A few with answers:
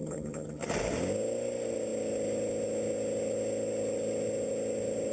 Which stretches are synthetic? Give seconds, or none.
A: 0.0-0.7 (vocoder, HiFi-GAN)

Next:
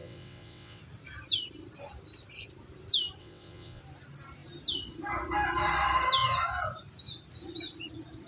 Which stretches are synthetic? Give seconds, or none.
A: 0.0-0.8 (vocoder, WaveNeXt); 3.2-3.8